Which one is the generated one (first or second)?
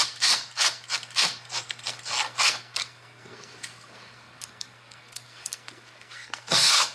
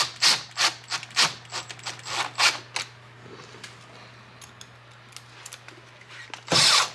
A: first